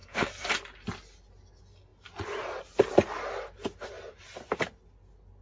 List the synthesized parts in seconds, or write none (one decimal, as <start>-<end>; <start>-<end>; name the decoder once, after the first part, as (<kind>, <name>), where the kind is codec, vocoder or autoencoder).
0.0-0.5 (codec, SNAC)